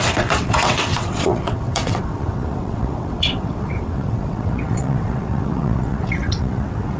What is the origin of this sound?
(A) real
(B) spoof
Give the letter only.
B